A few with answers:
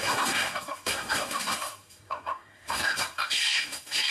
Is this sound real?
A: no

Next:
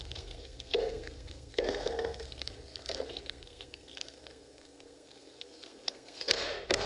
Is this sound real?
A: no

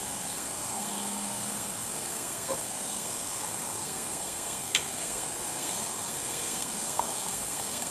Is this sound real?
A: no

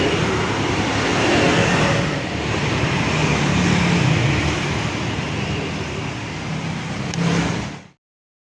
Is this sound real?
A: yes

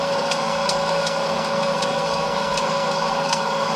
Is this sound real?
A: no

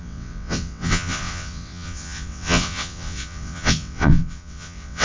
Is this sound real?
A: no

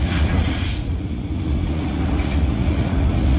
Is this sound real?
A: no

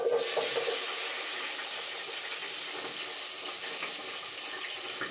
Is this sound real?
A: yes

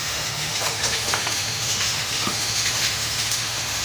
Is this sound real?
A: no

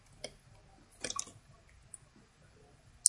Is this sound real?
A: yes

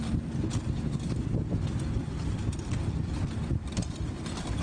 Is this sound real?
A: no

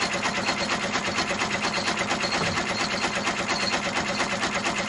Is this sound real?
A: yes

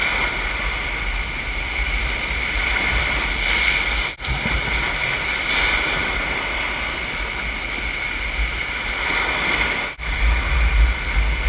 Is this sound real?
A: yes